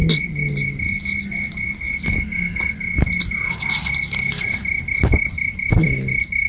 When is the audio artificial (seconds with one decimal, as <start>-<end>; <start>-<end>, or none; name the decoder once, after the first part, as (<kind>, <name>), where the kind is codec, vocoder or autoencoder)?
none